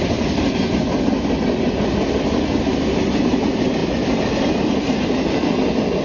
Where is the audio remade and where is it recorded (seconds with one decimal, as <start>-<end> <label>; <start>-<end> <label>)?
0.0-6.0 recorded

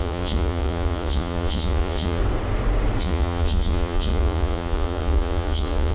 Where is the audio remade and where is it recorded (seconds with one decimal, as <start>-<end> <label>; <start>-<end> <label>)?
0.0-2.2 remade; 2.2-3.0 recorded; 3.0-5.9 remade

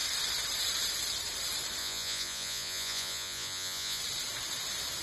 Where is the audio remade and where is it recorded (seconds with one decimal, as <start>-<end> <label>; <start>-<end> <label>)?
0.0-1.8 recorded; 1.8-4.0 remade; 4.0-5.0 recorded

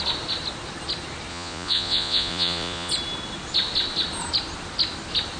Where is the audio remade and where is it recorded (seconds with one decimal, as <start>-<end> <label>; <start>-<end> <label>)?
0.0-1.3 recorded; 1.3-2.9 remade; 2.9-5.4 recorded

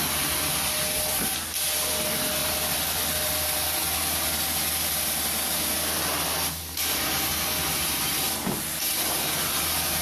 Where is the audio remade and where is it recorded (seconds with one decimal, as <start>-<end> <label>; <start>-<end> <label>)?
0.0-10.0 recorded

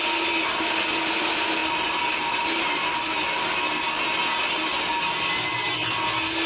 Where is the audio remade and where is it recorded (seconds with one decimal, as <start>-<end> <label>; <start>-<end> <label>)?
0.0-6.5 recorded